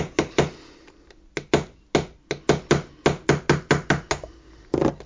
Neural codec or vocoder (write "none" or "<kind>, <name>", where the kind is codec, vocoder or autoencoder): none